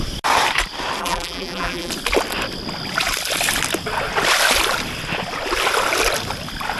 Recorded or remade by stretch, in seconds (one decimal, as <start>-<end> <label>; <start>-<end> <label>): 0.0-1.0 recorded; 1.0-1.9 remade; 1.9-6.8 recorded